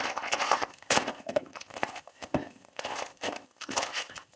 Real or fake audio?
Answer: fake